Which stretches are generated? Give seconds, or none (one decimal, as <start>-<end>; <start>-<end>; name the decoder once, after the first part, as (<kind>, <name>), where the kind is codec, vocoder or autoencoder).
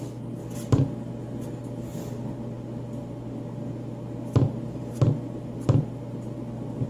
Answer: none